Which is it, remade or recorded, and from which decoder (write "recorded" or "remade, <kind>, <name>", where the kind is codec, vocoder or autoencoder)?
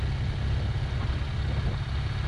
recorded